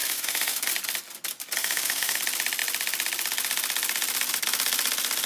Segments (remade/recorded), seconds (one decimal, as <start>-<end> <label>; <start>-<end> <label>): 0.0-0.7 remade; 0.7-1.6 recorded; 1.6-2.2 remade; 2.2-5.3 recorded